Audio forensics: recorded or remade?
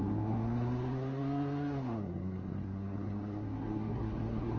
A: remade